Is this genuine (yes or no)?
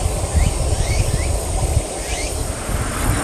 yes